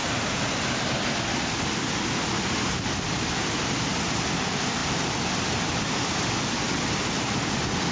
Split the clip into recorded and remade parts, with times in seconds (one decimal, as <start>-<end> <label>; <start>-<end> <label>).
0.0-7.9 recorded